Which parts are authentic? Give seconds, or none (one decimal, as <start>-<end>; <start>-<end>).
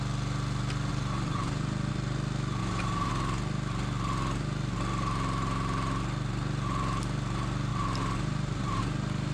0.0-0.9; 1.9-2.6; 3.1-7.7; 8.8-9.3